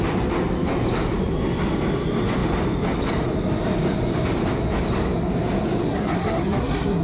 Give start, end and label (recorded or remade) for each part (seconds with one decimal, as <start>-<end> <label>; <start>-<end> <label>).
0.0-5.8 recorded; 5.8-7.0 remade